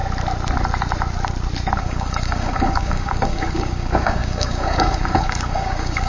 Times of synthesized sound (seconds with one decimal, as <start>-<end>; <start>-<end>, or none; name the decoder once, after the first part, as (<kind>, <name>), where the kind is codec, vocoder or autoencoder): 1.8-6.1 (codec, DAC)